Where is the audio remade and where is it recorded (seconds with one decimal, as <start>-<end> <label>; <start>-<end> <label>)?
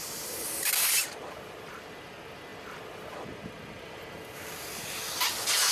0.0-1.0 recorded; 1.0-1.9 remade; 1.9-5.7 recorded